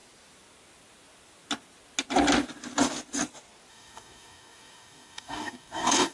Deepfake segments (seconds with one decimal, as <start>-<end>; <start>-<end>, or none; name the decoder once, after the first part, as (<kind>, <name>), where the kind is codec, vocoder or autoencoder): 3.7-6.1 (codec, DAC)